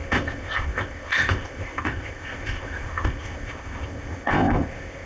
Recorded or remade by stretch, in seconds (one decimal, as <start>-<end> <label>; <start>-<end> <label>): 0.0-5.1 remade